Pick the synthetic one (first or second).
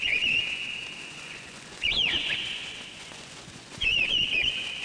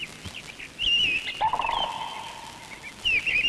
first